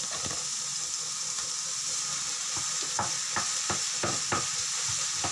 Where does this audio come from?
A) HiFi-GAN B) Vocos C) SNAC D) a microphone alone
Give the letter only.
D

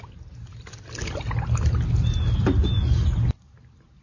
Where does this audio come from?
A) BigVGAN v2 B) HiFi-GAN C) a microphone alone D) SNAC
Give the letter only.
C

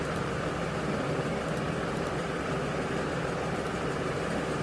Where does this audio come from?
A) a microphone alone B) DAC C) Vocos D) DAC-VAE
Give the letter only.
A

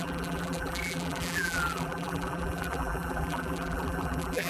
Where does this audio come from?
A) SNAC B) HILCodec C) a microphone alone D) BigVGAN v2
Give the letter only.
D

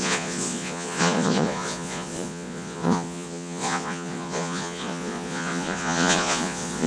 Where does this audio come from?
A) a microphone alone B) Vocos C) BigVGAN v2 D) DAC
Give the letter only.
B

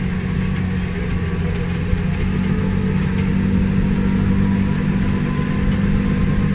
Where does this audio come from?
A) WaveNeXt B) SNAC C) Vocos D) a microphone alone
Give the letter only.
D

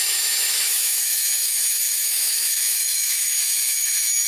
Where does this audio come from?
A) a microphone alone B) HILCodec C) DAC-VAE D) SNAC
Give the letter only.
C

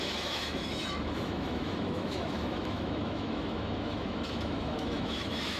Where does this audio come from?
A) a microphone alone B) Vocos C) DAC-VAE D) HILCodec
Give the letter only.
C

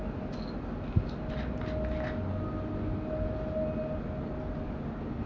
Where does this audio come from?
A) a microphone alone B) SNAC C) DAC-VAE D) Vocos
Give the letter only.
A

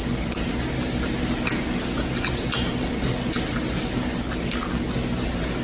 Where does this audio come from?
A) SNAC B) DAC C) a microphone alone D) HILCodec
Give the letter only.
C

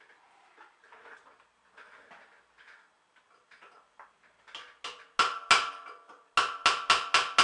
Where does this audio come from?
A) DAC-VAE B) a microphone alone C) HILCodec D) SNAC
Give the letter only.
B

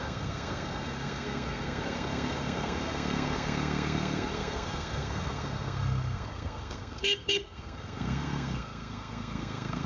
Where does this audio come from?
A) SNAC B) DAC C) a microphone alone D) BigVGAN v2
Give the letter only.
A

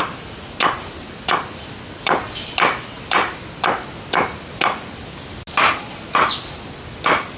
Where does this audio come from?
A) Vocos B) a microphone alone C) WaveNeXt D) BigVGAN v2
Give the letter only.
B